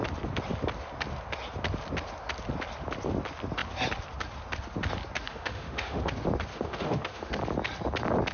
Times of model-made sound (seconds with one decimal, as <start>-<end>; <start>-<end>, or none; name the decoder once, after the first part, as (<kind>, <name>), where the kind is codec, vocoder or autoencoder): 5.3-6.1 (autoencoder, DAC-VAE); 6.5-7.3